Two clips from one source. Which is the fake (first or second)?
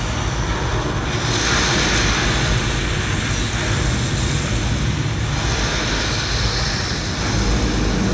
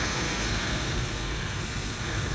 second